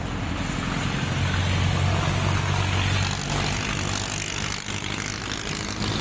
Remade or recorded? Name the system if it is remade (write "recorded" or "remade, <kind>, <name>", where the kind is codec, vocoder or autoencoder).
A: recorded